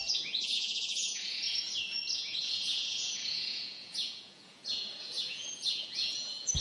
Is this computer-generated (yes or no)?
yes